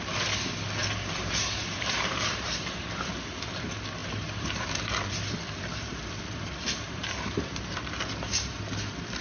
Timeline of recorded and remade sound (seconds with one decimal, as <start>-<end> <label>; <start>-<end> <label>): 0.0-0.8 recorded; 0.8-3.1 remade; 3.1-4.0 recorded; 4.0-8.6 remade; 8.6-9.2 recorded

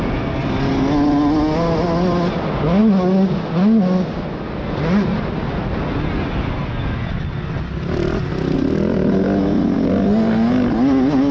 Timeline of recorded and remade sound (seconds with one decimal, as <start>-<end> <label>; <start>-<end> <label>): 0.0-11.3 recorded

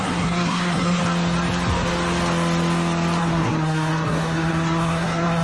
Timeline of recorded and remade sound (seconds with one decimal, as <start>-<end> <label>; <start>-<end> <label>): 0.0-1.0 remade; 1.0-3.2 recorded; 3.2-5.4 remade

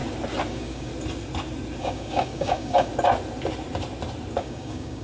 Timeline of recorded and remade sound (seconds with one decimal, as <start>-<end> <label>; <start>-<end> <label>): 0.0-0.5 recorded; 0.5-0.9 remade; 0.9-1.8 recorded; 1.8-2.9 remade; 2.9-4.4 recorded; 4.4-5.0 remade

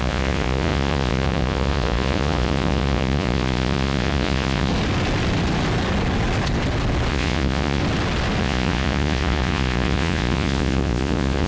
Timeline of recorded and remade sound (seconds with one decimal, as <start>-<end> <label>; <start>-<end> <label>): 0.0-4.7 remade; 4.7-7.1 recorded; 7.1-7.8 remade; 7.8-8.4 recorded; 8.4-11.5 remade

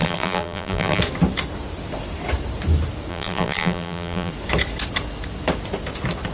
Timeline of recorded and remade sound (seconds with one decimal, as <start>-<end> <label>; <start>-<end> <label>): 0.0-1.0 remade; 1.0-3.1 recorded; 3.1-4.3 remade; 4.3-6.3 recorded

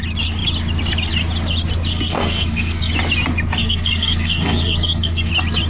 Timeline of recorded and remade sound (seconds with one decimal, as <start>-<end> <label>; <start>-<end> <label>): 0.0-1.9 recorded; 1.9-2.9 remade; 2.9-3.6 recorded; 3.6-5.3 remade; 5.3-5.7 recorded

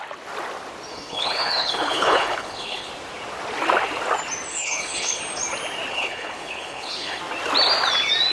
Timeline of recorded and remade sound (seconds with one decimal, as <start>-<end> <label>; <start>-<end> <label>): 0.0-0.9 recorded; 0.9-2.9 remade; 2.9-4.5 recorded; 4.5-5.2 remade; 5.2-5.9 recorded; 5.9-7.2 remade; 7.2-8.3 recorded